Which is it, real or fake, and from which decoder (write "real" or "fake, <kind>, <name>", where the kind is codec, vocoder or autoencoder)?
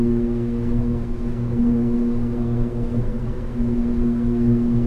fake, codec, SNAC